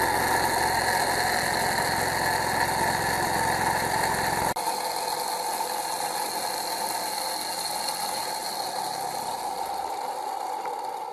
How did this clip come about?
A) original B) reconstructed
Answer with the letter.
A